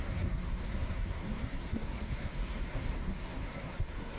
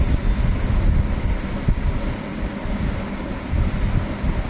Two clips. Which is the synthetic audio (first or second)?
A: first